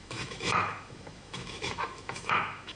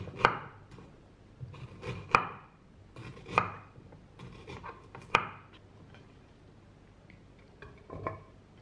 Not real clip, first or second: first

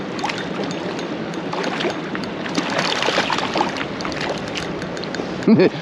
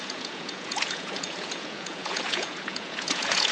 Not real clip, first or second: second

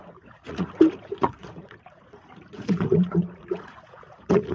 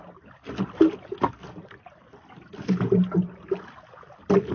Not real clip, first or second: first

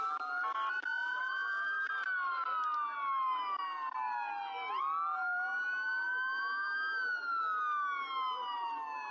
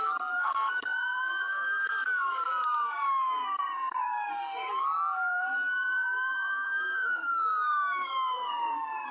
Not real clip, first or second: second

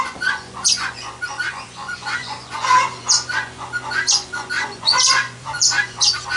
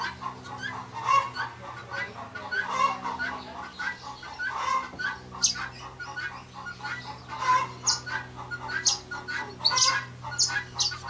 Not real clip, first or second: first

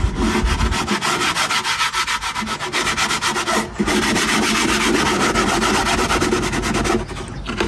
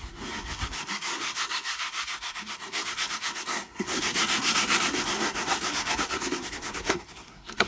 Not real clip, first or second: second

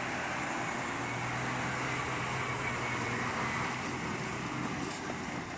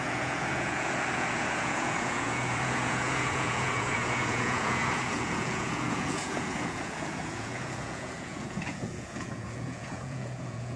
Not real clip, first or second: second